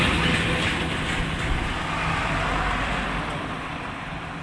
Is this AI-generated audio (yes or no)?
no